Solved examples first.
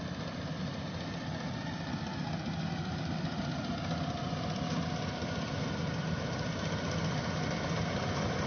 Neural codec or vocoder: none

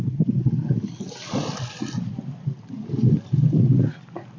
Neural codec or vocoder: none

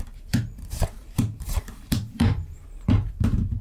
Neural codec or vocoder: vocoder, BigVGAN v2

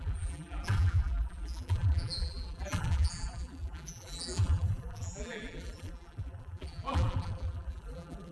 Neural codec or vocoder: vocoder, BigVGAN v2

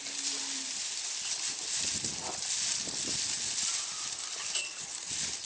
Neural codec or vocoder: none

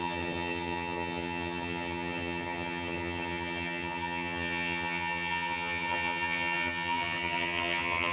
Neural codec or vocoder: vocoder, HiFi-GAN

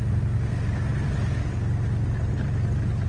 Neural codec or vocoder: none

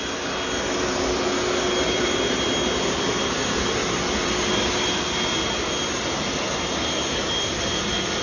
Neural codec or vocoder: none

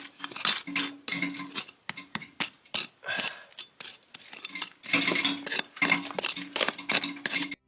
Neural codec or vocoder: none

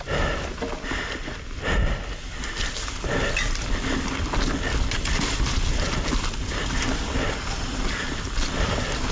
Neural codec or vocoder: none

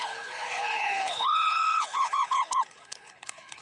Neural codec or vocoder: codec, HILCodec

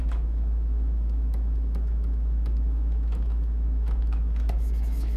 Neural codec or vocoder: autoencoder, DAC-VAE